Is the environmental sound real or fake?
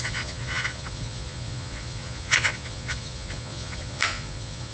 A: fake